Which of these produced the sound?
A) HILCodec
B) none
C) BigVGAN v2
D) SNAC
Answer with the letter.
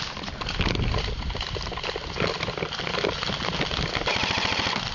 B